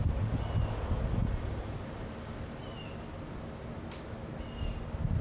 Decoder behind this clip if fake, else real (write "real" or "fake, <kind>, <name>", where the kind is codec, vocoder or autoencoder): real